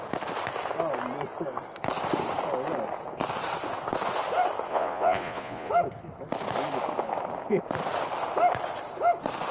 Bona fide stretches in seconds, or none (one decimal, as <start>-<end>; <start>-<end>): 0.0-4.7; 5.7-9.5